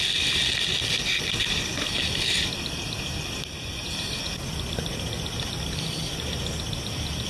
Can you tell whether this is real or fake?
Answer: real